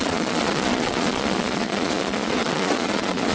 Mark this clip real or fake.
fake